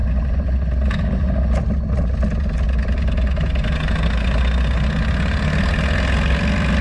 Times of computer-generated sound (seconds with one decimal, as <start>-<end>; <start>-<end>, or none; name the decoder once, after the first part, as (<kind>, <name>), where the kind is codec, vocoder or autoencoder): none